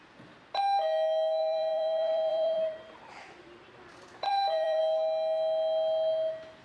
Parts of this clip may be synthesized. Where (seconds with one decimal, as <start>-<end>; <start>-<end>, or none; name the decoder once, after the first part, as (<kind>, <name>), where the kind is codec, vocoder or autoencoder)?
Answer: 1.4-4.8 (vocoder, BigVGAN v2)